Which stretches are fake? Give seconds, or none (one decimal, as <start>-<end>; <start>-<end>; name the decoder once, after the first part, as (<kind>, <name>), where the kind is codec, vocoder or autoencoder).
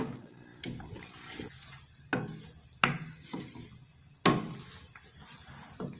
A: none